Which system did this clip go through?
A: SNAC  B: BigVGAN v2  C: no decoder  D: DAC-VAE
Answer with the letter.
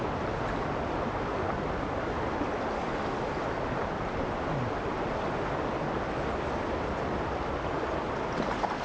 C